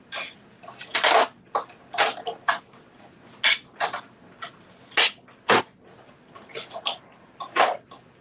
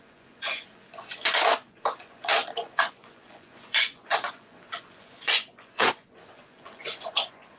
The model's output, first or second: second